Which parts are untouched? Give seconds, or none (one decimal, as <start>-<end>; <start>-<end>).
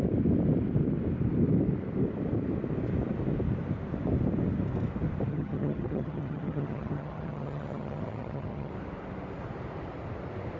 0.0-5.3; 8.7-10.6